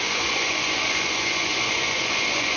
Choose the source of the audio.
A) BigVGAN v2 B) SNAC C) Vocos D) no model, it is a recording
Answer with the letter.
C